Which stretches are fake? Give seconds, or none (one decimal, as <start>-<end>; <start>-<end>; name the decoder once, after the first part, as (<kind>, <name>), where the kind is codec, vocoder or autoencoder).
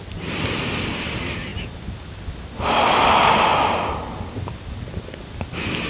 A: none